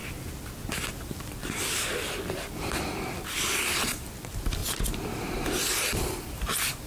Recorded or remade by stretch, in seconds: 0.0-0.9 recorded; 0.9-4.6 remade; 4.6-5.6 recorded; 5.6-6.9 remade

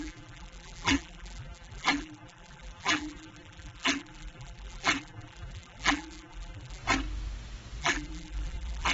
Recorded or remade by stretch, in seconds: 0.0-6.8 remade; 6.8-7.8 recorded; 7.8-8.9 remade

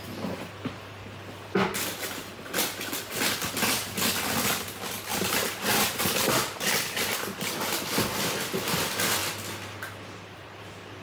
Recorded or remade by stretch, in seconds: 0.0-5.1 recorded; 5.1-6.2 remade; 6.2-11.0 recorded

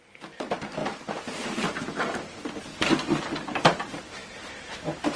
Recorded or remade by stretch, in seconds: 0.0-0.8 recorded; 0.8-3.2 remade; 3.2-5.2 recorded

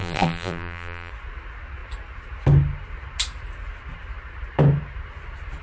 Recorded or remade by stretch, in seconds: 0.0-1.1 remade; 1.1-5.6 recorded

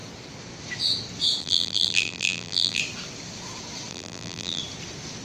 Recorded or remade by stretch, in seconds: 0.0-1.4 recorded; 1.4-2.8 remade; 2.8-3.9 recorded; 3.9-4.6 remade; 4.6-5.2 recorded

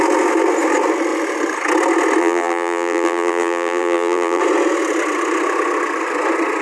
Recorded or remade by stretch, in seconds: 0.0-2.2 recorded; 2.2-4.4 remade; 4.4-6.6 recorded